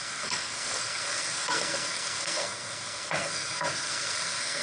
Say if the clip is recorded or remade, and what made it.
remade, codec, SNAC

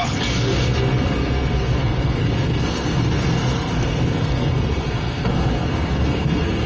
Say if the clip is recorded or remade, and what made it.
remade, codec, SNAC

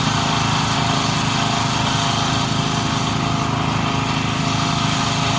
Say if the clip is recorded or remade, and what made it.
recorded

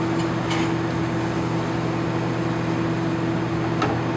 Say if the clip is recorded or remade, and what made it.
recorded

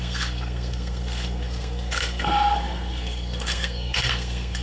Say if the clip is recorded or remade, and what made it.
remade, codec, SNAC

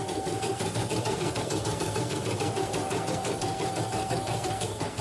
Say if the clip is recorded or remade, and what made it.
remade, codec, SNAC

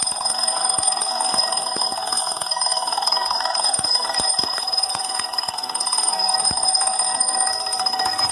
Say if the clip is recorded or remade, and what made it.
remade, codec, SNAC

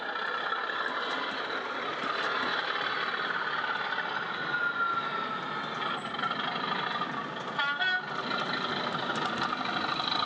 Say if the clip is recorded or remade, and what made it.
recorded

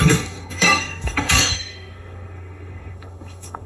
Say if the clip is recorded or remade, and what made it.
remade, codec, SNAC